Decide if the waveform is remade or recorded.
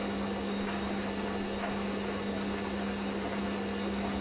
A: recorded